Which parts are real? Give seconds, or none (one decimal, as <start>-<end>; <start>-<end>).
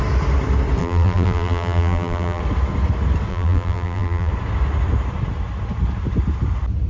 0.0-0.8; 2.4-3.3; 4.3-6.9